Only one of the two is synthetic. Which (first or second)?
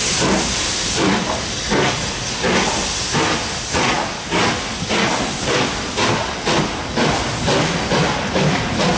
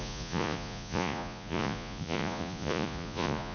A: second